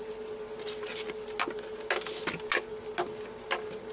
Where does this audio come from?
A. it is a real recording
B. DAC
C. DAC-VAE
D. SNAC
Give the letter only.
A